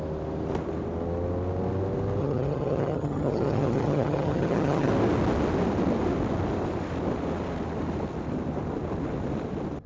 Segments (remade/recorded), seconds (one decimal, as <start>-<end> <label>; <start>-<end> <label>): 0.0-2.2 recorded; 2.2-4.9 remade; 4.9-9.9 recorded